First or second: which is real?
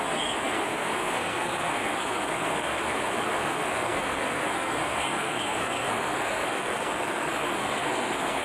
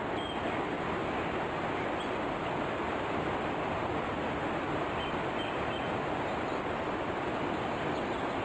second